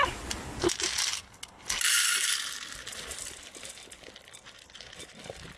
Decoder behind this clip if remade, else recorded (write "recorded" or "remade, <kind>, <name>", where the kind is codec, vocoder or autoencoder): recorded